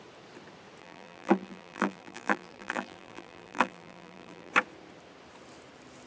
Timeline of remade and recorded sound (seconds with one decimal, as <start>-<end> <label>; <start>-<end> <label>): 0.0-0.8 recorded; 0.8-4.5 remade; 4.5-6.1 recorded